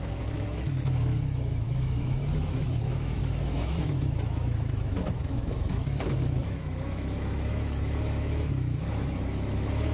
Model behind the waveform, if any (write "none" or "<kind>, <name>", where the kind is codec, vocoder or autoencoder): autoencoder, DAC-VAE